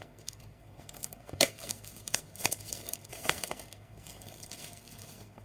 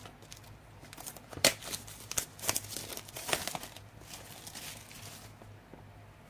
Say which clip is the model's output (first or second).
first